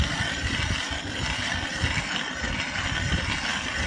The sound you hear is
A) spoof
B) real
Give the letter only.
B